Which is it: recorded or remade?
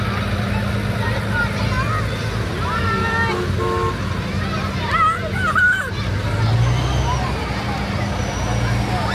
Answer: recorded